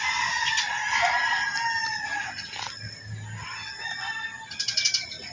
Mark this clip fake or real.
real